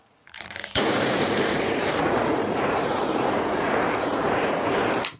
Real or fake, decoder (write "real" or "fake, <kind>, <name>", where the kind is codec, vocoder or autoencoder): fake, vocoder, Vocos